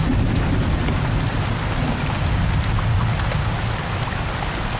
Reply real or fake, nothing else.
real